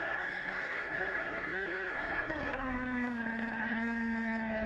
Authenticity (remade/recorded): remade